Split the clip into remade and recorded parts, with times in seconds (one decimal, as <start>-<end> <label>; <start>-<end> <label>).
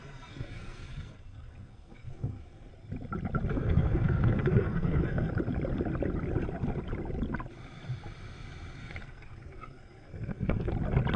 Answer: 0.0-2.7 remade; 2.7-3.5 recorded; 3.5-5.3 remade; 5.3-8.8 recorded; 8.8-10.7 remade; 10.7-11.2 recorded